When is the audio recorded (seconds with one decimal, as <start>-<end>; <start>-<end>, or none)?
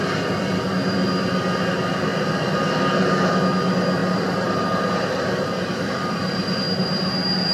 0.0-4.0; 6.6-7.5